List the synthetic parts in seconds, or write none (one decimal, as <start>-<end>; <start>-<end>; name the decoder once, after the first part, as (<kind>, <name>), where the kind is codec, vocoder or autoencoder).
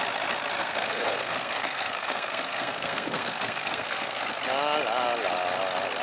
0.6-4.2 (codec, SNAC)